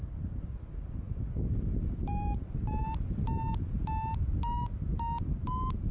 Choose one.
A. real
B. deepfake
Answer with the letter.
A